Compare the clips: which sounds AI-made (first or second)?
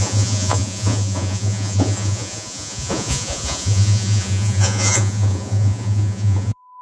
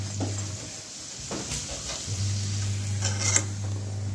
first